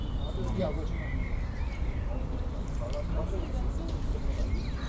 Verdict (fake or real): real